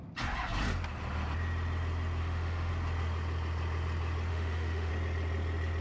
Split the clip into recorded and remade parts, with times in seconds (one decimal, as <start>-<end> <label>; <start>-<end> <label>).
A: 0.0-2.2 recorded; 2.2-2.7 remade; 2.7-4.3 recorded; 4.3-4.9 remade; 4.9-5.8 recorded